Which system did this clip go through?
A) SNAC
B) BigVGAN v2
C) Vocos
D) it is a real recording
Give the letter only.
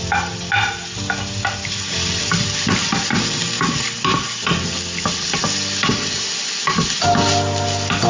D